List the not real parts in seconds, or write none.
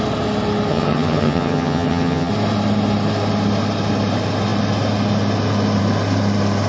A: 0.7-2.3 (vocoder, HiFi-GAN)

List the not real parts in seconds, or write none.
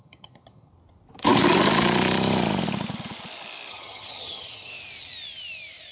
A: 0.0-0.7 (vocoder, HiFi-GAN); 3.7-4.7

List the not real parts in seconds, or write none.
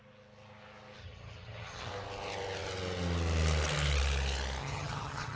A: 1.0-1.9 (vocoder, HiFi-GAN); 4.6-5.4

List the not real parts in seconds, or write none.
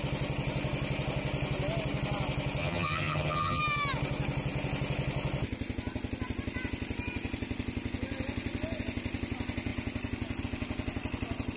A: 2.6-3.6 (vocoder, HiFi-GAN)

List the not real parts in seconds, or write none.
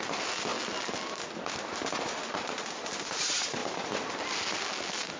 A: none